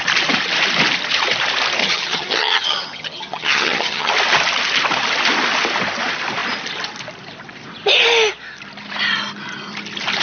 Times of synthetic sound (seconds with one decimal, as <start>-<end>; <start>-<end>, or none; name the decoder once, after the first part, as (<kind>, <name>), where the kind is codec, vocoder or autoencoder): 1.8-4.1 (vocoder, HiFi-GAN)

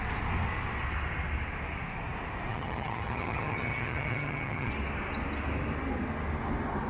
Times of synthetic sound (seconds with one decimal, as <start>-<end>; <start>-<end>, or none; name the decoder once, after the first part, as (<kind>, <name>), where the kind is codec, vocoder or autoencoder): 2.5-4.7 (vocoder, HiFi-GAN)

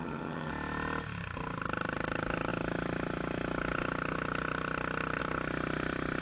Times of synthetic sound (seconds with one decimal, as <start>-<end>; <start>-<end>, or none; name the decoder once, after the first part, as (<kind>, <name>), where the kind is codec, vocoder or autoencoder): 0.0-0.5 (vocoder, HiFi-GAN)

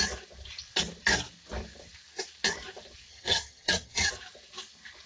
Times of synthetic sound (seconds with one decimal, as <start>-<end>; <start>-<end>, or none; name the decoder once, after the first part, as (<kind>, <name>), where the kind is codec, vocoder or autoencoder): 3.1-4.1 (vocoder, HiFi-GAN)

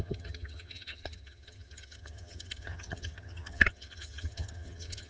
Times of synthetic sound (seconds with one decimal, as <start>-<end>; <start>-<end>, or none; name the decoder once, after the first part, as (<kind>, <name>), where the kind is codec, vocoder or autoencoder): 0.0-5.1 (vocoder, HiFi-GAN)

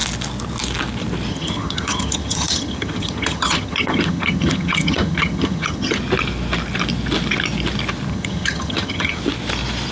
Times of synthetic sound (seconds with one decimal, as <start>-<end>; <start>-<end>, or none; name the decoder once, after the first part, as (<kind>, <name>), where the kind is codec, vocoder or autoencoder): 1.3-6.0 (vocoder, HiFi-GAN); 8.1-9.2

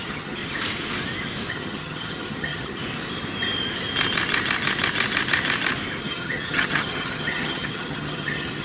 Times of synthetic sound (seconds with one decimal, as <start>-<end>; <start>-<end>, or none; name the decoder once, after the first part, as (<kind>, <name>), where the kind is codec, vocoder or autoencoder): 0.0-0.4 (vocoder, HiFi-GAN); 1.5-2.8; 6.0-8.6

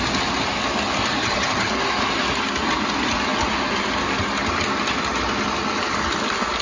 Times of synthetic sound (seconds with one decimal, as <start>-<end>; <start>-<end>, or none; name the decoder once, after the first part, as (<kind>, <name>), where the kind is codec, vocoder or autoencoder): 1.2-1.7 (vocoder, HiFi-GAN)